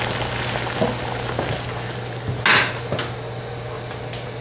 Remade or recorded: recorded